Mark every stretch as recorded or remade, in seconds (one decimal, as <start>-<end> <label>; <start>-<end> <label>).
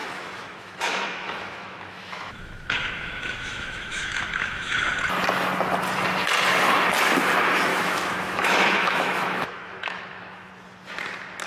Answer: 0.0-4.8 remade; 4.8-7.7 recorded; 7.7-10.5 remade; 10.5-11.5 recorded